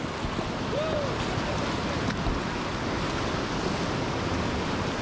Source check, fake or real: real